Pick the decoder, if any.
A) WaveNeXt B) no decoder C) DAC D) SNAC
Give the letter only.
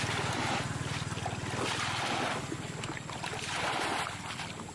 B